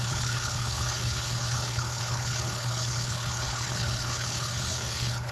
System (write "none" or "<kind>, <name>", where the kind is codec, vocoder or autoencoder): codec, HILCodec